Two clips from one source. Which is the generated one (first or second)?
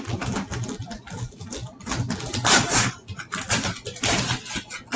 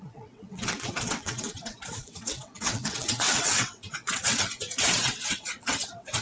second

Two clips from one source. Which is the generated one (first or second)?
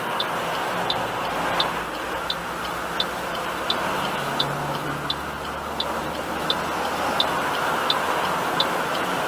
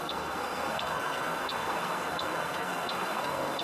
second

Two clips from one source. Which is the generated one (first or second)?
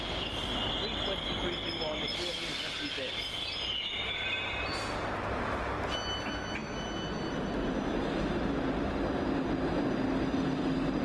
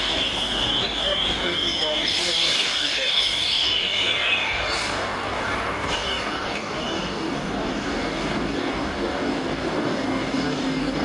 second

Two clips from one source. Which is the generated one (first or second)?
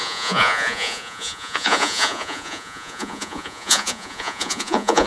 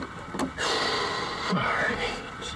first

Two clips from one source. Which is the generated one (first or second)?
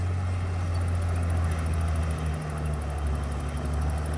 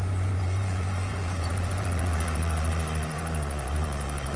second